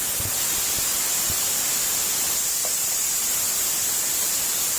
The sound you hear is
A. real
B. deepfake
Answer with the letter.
A